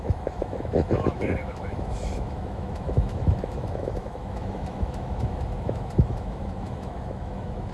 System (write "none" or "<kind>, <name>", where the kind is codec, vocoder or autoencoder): autoencoder, DAC-VAE